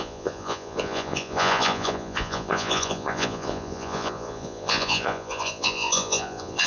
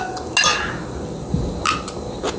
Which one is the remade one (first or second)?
first